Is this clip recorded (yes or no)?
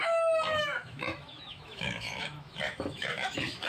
no